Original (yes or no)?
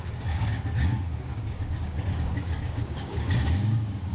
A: no